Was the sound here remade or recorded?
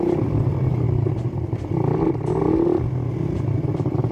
recorded